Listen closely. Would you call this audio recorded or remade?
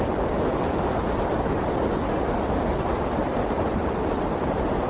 recorded